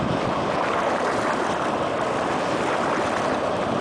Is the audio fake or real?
real